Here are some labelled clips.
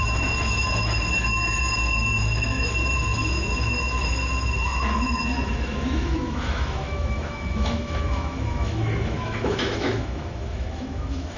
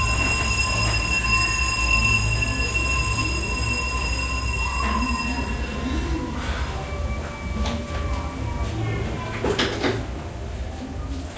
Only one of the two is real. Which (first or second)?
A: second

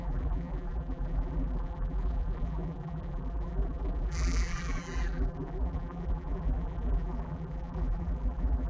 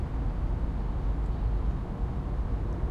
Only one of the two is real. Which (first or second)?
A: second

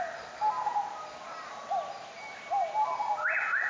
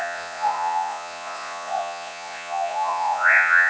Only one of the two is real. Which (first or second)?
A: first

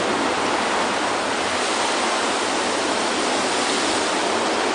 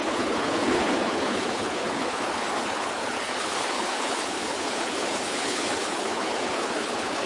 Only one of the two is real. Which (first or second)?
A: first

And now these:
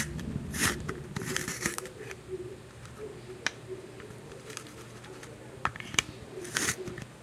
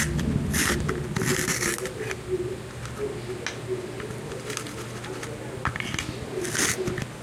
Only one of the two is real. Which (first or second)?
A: second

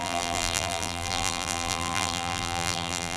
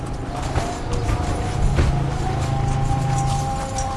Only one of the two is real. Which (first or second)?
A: second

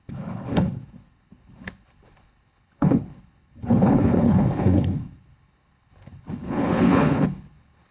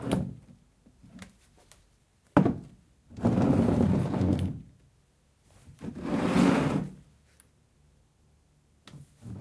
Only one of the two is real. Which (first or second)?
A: second